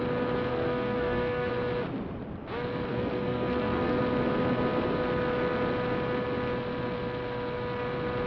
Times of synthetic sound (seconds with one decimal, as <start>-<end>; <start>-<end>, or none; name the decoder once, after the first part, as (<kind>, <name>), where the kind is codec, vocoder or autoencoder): 0.5-1.5 (codec, SNAC); 2.9-4.0